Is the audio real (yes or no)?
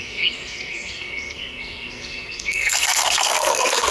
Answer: no